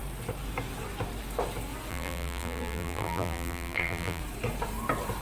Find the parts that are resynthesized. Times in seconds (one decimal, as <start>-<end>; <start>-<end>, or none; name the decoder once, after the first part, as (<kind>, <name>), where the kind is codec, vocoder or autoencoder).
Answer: 1.9-4.2 (vocoder, BigVGAN v2)